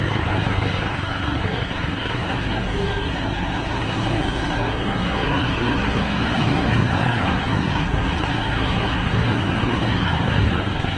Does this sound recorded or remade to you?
remade